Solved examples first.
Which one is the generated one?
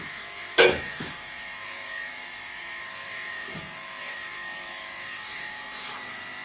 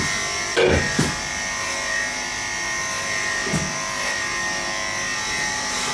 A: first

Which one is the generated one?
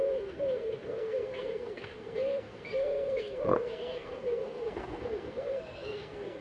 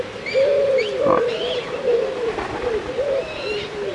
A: first